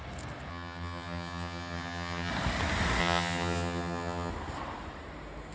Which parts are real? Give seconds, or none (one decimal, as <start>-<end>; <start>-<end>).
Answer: 0.0-0.5; 2.3-3.0; 4.3-5.5